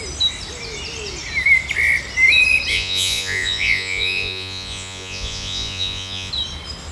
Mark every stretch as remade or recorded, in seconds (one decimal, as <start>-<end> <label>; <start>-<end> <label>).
0.0-2.7 recorded; 2.7-6.3 remade; 6.3-6.9 recorded